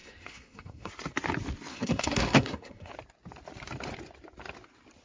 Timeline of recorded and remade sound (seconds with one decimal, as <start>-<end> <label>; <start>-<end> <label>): 0.0-0.9 remade; 0.9-1.7 recorded; 1.7-2.9 remade; 2.9-5.0 recorded